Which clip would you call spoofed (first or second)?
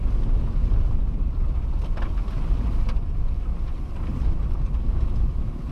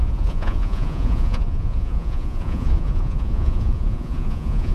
second